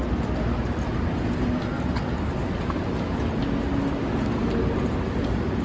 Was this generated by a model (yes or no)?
no